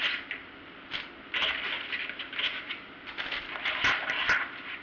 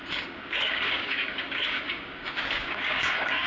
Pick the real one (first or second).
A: first